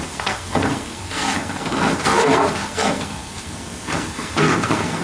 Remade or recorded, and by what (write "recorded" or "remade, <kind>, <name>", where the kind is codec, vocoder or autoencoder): remade, codec, SNAC